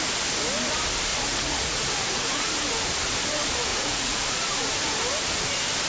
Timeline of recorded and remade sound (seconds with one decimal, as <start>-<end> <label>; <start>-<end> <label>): 0.0-1.1 recorded; 1.1-2.5 remade; 2.5-3.7 recorded; 3.7-4.7 remade; 4.7-5.9 recorded

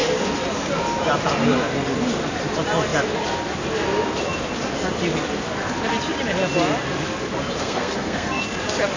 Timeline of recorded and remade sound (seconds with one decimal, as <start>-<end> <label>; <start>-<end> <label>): 0.0-7.6 recorded; 7.6-8.4 remade; 8.4-9.0 recorded

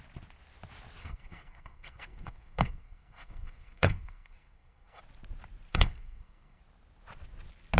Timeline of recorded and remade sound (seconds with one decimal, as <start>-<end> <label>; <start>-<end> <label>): 0.0-1.0 recorded; 1.0-5.0 remade; 5.0-5.7 recorded; 5.7-6.6 remade; 6.6-7.8 recorded

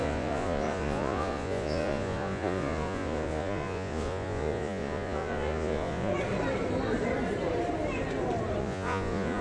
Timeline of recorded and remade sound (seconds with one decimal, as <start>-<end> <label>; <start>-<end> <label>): 0.0-6.1 remade; 6.1-8.6 recorded; 8.6-9.4 remade

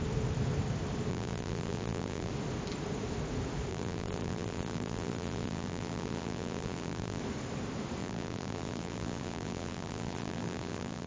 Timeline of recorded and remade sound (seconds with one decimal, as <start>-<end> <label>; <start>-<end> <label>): 0.0-1.1 recorded; 1.1-2.3 remade; 2.3-3.7 recorded; 3.7-7.2 remade; 7.2-8.0 recorded; 8.0-11.1 remade

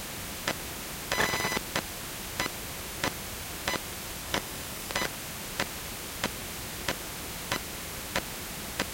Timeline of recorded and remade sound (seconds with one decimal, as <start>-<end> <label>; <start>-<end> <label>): 0.0-4.2 recorded; 4.2-4.9 remade; 4.9-8.9 recorded

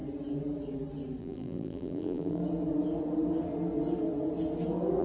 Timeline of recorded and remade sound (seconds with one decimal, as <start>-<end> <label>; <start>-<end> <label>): 0.0-1.2 recorded; 1.2-2.4 remade; 2.4-5.0 recorded